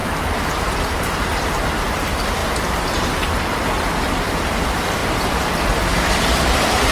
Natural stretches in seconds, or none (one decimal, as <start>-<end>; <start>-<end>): 0.0-5.0